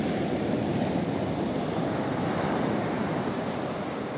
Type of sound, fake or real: fake